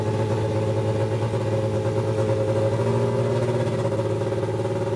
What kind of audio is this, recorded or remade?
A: recorded